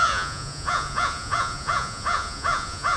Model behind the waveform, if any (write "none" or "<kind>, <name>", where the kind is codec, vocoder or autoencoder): vocoder, Vocos